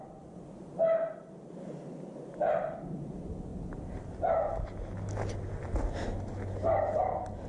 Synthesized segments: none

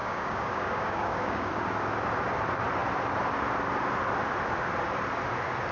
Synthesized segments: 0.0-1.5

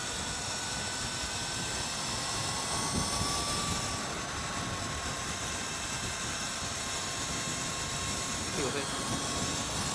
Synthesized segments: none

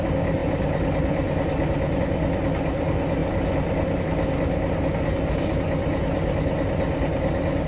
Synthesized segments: none

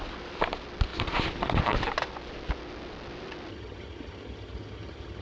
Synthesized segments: 3.5-5.2

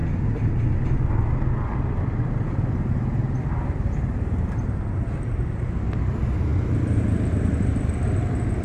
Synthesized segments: none

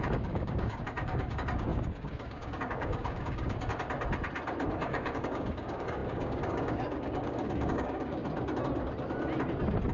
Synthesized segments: 0.0-3.7; 4.7-8.2

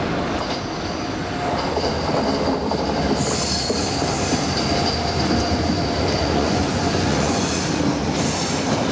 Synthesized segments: 6.2-7.6